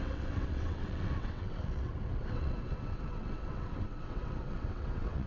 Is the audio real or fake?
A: fake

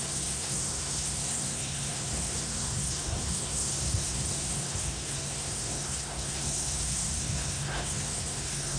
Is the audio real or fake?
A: fake